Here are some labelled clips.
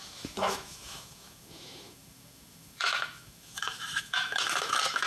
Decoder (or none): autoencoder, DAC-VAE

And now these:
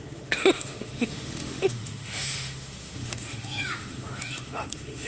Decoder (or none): autoencoder, DAC-VAE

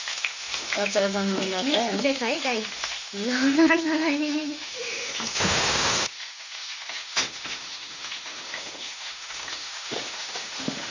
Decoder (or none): autoencoder, DAC-VAE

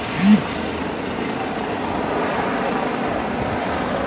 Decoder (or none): none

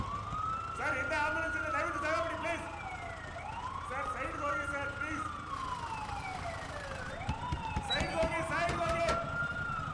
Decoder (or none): none